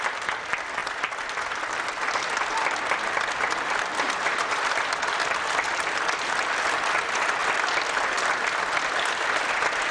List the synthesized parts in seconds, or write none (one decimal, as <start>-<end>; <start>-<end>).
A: 0.8-4.7; 7.4-9.9